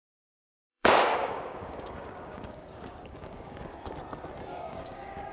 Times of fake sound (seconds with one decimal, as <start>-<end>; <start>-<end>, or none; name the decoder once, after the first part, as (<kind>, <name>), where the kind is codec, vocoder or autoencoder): 0.7-3.9 (codec, DAC); 4.5-5.3